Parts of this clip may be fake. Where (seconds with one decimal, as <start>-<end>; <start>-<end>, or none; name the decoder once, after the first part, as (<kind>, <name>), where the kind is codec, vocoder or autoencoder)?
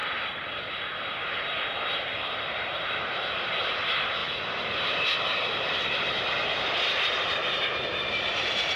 0.0-8.8 (vocoder, BigVGAN v2)